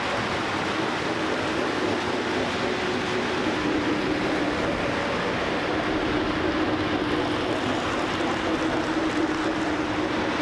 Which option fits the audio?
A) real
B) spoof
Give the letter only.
A